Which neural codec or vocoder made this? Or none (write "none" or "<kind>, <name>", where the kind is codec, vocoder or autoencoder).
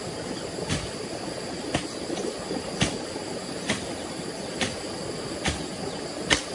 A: none